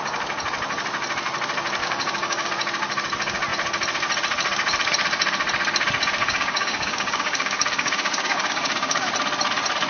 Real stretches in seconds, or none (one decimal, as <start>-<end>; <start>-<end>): 0.0-1.8; 2.5-6.2; 9.1-9.9